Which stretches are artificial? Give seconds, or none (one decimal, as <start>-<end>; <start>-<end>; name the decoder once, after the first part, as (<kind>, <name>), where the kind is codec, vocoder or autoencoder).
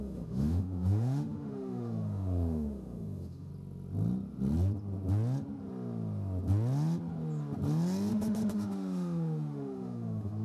0.0-3.5 (autoencoder, DAC-VAE); 8.1-10.4